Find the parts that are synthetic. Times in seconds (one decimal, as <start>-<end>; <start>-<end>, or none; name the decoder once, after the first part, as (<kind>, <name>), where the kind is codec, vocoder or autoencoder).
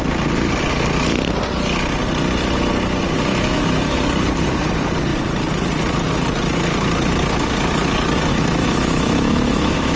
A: 3.3-4.0 (autoencoder, DAC-VAE); 8.3-10.0